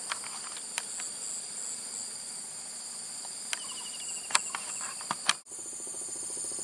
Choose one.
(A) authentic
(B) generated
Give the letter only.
A